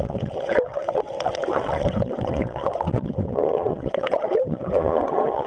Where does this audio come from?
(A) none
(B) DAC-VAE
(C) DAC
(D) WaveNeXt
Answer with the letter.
D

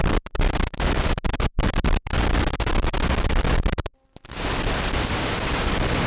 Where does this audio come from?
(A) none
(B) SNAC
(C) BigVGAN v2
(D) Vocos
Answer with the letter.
A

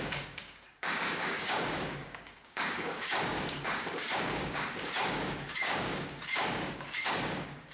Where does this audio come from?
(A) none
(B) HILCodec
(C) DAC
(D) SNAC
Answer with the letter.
C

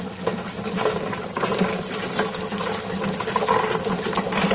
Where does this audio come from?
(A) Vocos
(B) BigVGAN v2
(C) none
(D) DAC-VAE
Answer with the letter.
C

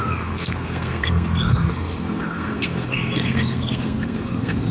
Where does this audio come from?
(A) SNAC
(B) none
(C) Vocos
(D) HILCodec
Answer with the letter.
A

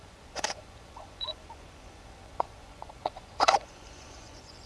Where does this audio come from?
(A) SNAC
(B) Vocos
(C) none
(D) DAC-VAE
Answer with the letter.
B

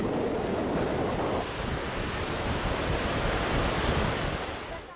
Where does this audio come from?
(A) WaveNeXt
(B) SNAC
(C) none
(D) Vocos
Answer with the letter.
C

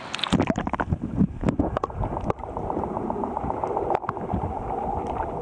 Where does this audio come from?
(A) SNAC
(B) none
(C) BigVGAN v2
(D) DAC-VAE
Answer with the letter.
B